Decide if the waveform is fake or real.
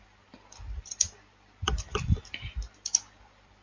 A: fake